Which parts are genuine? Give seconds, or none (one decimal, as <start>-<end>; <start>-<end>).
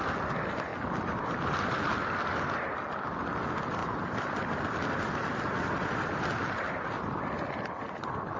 5.2-6.6